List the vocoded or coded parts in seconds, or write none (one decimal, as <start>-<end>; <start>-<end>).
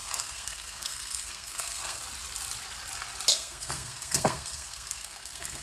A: 0.0-2.0; 3.3-5.6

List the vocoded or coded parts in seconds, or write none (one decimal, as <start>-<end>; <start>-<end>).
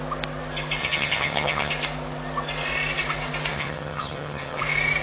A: 0.8-1.7; 3.5-4.6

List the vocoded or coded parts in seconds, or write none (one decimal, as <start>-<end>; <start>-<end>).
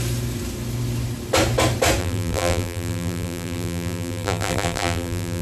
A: 2.0-5.4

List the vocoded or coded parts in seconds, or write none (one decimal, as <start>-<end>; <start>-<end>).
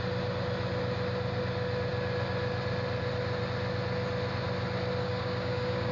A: 5.0-5.9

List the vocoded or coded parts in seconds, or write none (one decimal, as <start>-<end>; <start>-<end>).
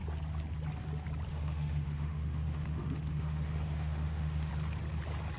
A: 1.3-4.5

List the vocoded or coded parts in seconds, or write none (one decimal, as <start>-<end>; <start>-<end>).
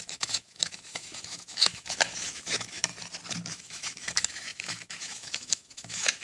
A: 0.0-2.9; 3.5-6.2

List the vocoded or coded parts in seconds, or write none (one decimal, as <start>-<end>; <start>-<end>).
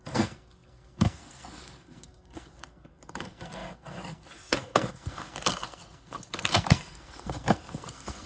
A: 0.0-8.3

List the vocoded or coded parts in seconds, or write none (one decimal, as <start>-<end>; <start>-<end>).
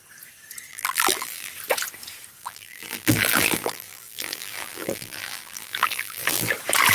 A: 0.7-1.5; 2.4-6.5